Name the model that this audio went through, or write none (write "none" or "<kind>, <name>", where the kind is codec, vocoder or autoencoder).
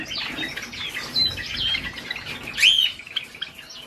none